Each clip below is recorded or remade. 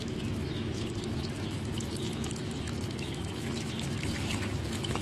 remade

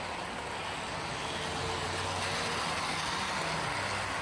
recorded